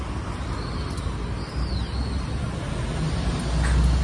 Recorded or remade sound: recorded